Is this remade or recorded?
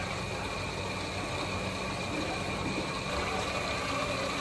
recorded